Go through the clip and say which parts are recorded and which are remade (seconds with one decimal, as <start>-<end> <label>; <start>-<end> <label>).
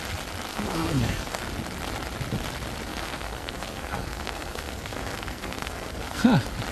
0.0-0.5 recorded; 0.5-1.4 remade; 1.4-2.9 recorded; 2.9-6.2 remade; 6.2-6.7 recorded